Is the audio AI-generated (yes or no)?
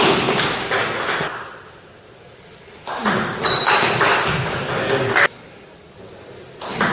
no